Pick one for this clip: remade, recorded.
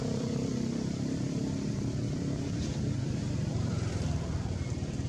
remade